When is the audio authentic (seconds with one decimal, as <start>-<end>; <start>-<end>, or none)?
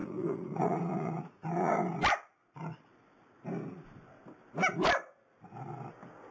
1.7-6.3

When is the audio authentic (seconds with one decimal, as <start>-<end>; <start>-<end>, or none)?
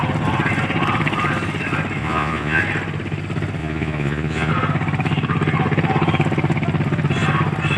0.0-2.0; 2.6-3.6; 4.5-7.8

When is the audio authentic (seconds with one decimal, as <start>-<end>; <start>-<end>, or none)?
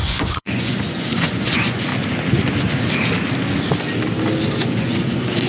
1.9-4.5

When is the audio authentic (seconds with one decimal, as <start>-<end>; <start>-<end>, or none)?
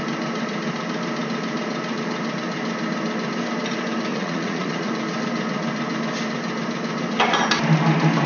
0.0-4.1; 4.9-8.3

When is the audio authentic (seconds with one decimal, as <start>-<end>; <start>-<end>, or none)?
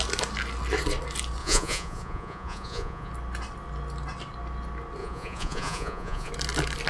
0.0-1.4; 3.1-5.0; 6.3-6.9